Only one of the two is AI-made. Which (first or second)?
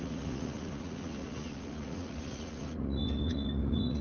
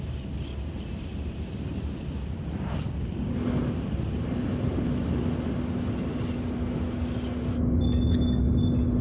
first